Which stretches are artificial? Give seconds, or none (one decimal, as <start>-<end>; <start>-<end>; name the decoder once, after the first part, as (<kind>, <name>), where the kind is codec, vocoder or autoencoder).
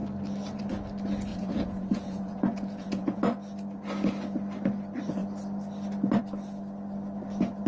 1.3-3.2 (vocoder, Vocos)